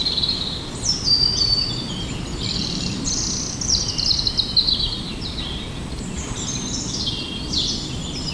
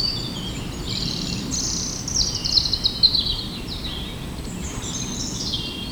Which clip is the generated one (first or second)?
first